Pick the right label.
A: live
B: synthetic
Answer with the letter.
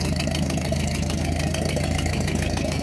B